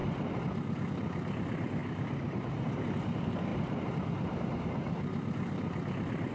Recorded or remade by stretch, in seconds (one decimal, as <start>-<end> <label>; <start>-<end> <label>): 0.0-1.8 remade; 1.8-2.5 recorded; 2.5-6.3 remade